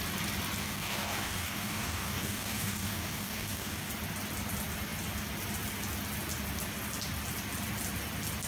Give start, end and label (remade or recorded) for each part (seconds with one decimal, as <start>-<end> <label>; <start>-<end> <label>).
0.0-0.6 recorded; 0.6-3.9 remade; 3.9-8.5 recorded